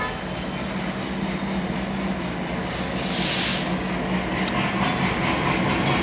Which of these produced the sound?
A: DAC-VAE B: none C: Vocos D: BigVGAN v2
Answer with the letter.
B